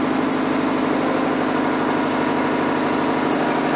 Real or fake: real